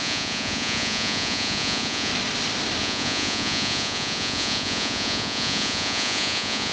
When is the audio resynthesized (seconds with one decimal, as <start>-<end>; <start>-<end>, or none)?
0.0-2.1; 2.8-6.7

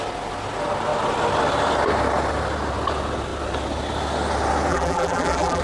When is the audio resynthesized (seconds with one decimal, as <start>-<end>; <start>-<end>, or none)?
4.7-5.6

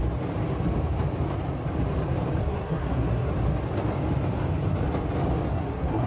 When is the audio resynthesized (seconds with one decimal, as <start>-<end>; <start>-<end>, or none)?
2.4-3.3; 5.5-6.1

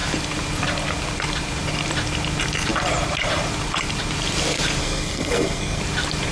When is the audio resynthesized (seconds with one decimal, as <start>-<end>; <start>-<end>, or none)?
4.8-5.8

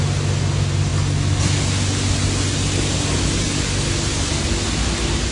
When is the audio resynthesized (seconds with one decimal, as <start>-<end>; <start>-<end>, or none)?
none